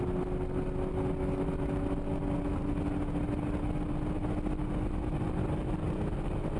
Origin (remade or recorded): recorded